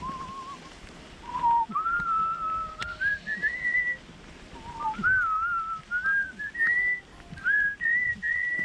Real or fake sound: real